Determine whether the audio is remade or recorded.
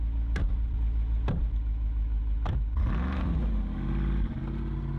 recorded